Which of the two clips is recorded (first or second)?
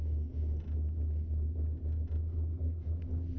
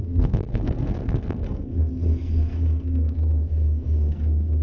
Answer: first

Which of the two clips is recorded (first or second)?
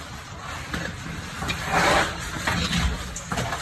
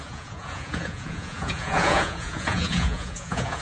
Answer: first